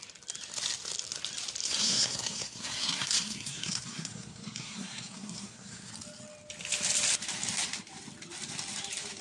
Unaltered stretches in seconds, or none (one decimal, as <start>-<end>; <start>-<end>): 0.0-1.6; 5.9-9.2